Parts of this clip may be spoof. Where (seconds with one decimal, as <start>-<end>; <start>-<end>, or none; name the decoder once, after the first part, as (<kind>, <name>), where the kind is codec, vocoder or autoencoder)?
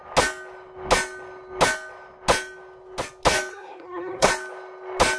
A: 3.5-4.3 (codec, SNAC)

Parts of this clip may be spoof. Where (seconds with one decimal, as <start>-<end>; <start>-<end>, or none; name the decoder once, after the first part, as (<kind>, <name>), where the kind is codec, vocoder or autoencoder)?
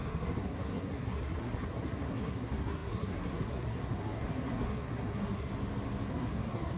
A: 0.0-5.5 (codec, SNAC); 6.1-6.8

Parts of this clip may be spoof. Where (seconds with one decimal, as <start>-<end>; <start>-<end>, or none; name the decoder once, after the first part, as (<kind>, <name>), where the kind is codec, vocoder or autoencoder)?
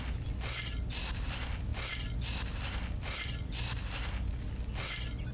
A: none